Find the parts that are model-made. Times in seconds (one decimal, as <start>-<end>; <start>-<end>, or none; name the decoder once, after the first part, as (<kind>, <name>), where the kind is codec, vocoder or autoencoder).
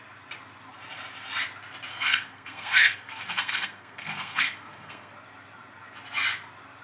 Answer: 1.9-5.1 (codec, SNAC)